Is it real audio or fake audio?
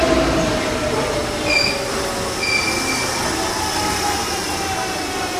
real